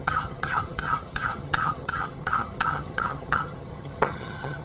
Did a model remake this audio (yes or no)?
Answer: yes